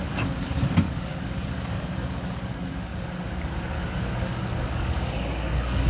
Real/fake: fake